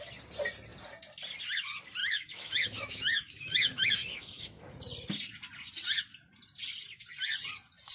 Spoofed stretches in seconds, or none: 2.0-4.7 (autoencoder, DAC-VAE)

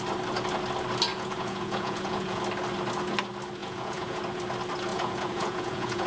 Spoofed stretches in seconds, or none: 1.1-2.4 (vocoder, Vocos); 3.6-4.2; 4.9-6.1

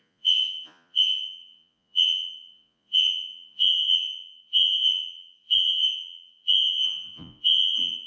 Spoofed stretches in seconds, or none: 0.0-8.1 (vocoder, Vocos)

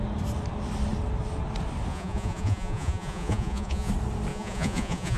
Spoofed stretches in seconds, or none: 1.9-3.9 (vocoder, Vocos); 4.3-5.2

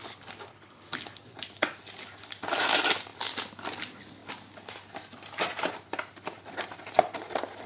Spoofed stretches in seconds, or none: 0.5-1.2 (codec, HILCodec)